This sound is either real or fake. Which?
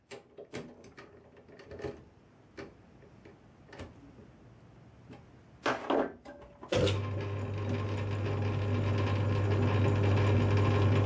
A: real